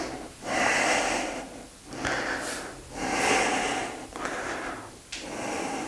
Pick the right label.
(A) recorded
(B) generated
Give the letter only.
A